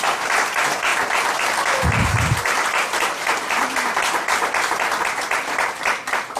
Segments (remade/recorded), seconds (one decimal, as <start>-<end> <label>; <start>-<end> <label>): 0.0-6.4 remade